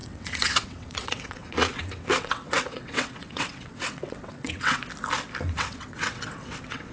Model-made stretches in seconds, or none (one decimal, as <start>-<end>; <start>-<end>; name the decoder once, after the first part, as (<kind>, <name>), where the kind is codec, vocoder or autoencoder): 0.0-4.8 (vocoder, WaveNeXt); 5.5-6.9